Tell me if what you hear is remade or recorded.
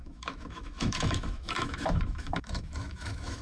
remade